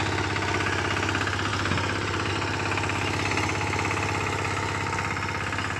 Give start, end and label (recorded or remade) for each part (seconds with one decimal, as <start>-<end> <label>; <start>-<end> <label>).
0.0-1.5 recorded; 1.5-2.3 remade; 2.3-5.8 recorded